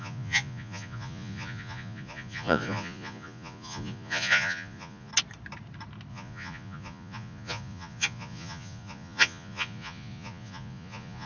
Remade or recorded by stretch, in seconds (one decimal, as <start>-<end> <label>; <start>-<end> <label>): 0.0-5.1 remade; 5.1-6.1 recorded; 6.1-11.3 remade